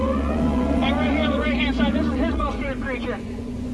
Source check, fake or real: fake